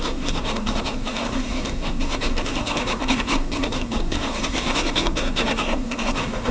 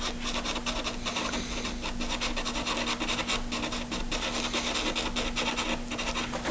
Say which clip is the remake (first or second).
first